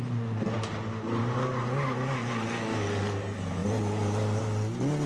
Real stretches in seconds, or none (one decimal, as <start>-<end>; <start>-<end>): 0.0-5.1